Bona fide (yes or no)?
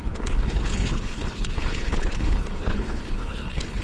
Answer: no